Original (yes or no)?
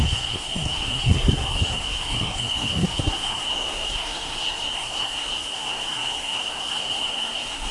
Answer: no